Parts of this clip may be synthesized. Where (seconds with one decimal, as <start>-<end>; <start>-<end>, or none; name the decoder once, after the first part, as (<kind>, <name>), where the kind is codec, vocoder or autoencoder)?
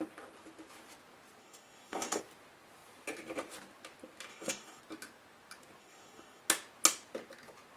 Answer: 1.4-2.2 (codec, DAC); 4.3-4.8; 5.8-6.4